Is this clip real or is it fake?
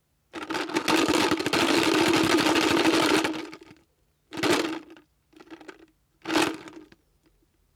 real